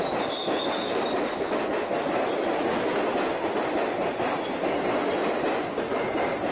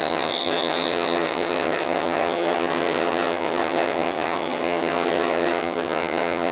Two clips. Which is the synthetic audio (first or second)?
second